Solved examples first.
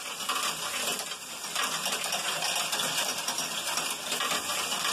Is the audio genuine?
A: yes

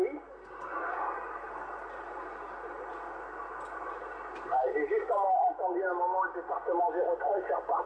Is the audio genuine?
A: yes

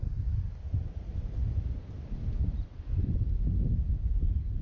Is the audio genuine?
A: yes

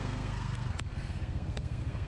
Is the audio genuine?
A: no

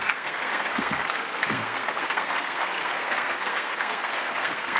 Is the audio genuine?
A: no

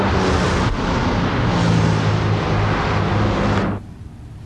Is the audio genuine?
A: yes